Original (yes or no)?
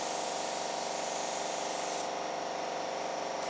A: yes